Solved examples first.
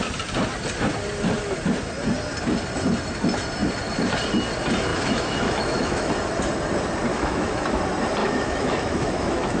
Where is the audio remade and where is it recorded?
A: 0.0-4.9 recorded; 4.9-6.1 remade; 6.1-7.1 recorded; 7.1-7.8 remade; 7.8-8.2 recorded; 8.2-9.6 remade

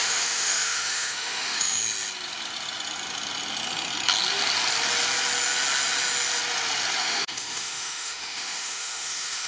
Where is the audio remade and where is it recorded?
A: 0.0-1.8 remade; 1.8-7.0 recorded; 7.0-9.5 remade

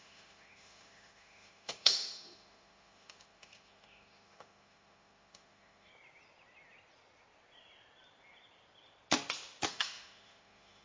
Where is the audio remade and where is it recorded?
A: 0.0-5.9 remade; 5.9-9.7 recorded; 9.7-10.8 remade

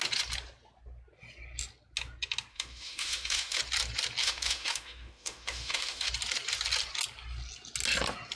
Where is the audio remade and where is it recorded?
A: 0.0-2.5 recorded; 2.5-3.6 remade; 3.6-4.2 recorded; 4.2-6.1 remade; 6.1-8.4 recorded

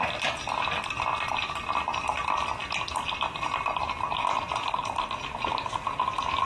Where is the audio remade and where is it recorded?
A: 0.0-6.5 recorded